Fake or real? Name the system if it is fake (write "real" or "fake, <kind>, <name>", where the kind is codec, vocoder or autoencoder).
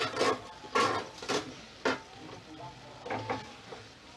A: real